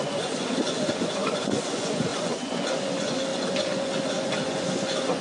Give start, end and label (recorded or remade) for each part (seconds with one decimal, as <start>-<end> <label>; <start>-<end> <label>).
0.0-5.2 remade